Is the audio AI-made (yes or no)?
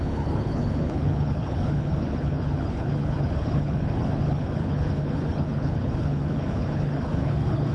yes